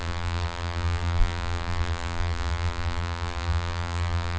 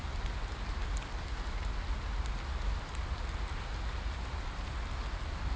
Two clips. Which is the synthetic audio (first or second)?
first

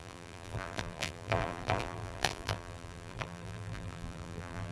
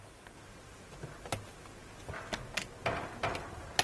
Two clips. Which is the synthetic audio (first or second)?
first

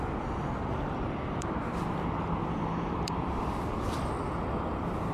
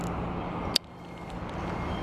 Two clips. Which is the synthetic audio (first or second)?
first